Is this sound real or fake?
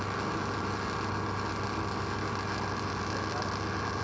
real